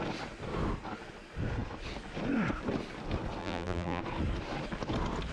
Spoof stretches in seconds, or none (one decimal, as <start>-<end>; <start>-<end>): 3.4-4.0